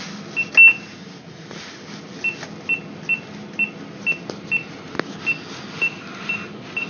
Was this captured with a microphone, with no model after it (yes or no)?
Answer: yes